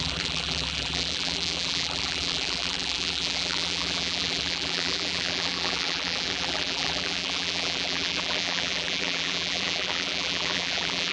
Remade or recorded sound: remade